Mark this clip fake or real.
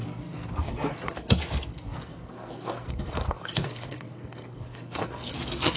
fake